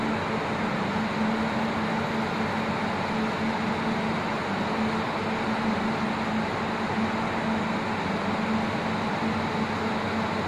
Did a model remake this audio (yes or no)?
no